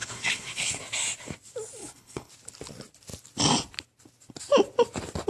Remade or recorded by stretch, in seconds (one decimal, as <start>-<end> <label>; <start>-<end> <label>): 0.0-0.8 remade; 0.8-1.8 recorded; 1.8-2.3 remade; 2.3-5.3 recorded